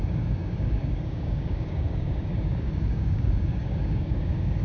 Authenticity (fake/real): fake